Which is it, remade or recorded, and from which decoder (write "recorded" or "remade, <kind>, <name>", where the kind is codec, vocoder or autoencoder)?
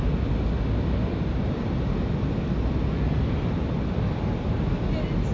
recorded